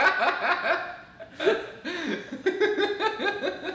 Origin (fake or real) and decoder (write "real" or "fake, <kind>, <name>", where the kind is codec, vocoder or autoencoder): real